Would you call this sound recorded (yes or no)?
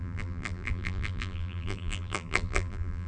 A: no